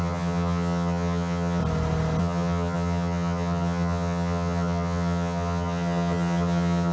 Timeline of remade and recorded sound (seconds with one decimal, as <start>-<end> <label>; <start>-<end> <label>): 0.0-1.6 remade; 1.6-2.2 recorded; 2.2-6.9 remade